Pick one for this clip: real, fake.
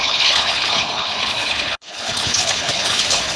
fake